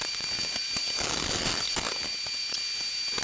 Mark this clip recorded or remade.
recorded